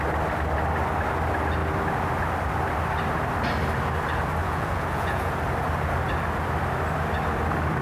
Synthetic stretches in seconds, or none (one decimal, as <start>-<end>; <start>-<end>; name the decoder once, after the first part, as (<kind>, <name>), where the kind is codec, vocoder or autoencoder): 4.4-5.3 (vocoder, Vocos)